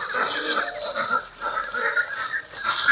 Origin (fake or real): real